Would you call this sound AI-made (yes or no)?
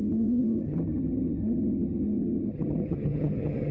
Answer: yes